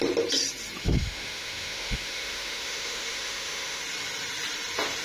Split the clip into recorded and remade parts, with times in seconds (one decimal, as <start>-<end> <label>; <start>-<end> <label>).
0.0-0.8 recorded; 0.8-3.8 remade; 3.8-5.0 recorded